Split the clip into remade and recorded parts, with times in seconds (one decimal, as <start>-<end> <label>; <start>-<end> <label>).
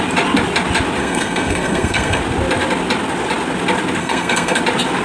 0.0-1.0 recorded; 1.0-2.2 remade; 2.2-4.0 recorded; 4.0-4.6 remade; 4.6-5.0 recorded